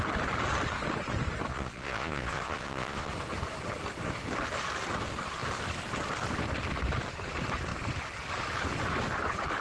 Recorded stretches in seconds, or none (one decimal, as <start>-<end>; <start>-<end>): 0.0-1.5; 3.1-9.6